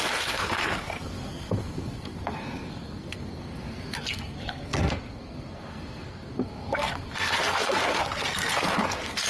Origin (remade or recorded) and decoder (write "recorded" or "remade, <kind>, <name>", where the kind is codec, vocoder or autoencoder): remade, codec, SNAC